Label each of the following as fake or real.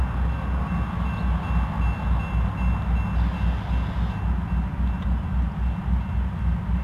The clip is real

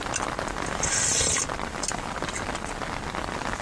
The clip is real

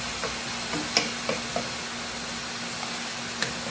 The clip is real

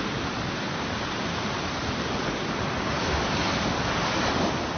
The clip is real